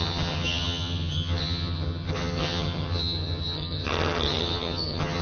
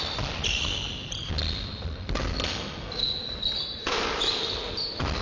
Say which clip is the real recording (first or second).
second